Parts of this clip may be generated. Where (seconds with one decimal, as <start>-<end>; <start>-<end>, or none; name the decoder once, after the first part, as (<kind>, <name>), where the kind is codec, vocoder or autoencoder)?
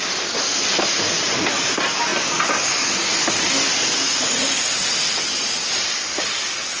none